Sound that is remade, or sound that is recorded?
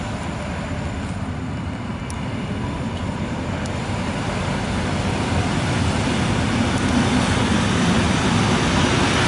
recorded